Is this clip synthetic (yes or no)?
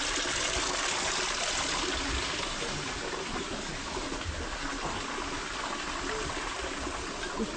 no